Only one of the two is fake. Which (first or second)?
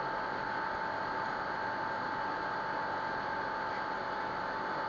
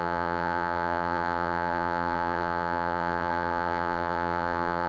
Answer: second